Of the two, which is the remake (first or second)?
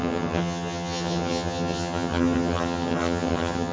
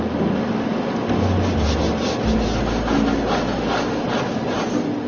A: first